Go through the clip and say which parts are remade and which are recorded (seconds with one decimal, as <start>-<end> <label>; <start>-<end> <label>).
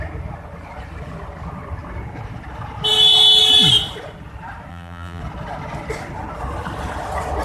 0.0-4.7 recorded; 4.7-5.2 remade; 5.2-7.4 recorded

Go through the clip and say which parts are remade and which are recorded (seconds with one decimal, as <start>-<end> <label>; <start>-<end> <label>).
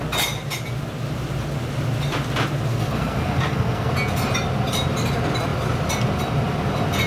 0.0-2.7 recorded; 2.7-3.9 remade; 3.9-7.1 recorded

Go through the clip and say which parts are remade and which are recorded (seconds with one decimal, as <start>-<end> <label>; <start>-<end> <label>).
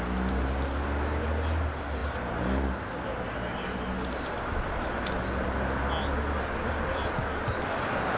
0.0-8.2 recorded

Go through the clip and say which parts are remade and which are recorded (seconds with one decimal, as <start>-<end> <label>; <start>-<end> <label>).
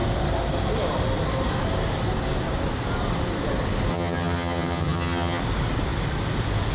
0.0-3.9 recorded; 3.9-5.4 remade; 5.4-6.7 recorded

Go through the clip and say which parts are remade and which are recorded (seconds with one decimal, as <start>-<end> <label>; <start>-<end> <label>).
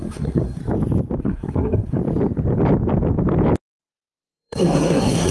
0.0-0.6 remade; 0.6-1.2 recorded; 1.2-2.0 remade; 2.0-3.8 recorded; 3.8-5.3 remade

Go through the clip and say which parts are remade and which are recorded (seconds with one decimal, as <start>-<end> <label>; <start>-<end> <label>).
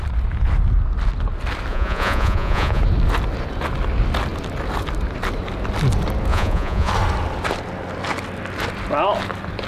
0.0-1.7 recorded; 1.7-2.8 remade; 2.8-6.3 recorded; 6.3-6.9 remade; 6.9-9.7 recorded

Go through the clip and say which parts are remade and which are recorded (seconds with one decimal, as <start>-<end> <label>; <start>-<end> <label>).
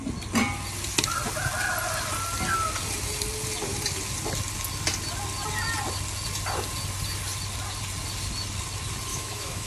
0.0-9.1 recorded; 9.1-9.7 remade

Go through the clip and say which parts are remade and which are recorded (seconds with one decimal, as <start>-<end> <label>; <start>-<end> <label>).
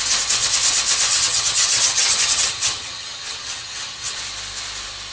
0.0-1.1 recorded; 1.1-4.2 remade; 4.2-5.1 recorded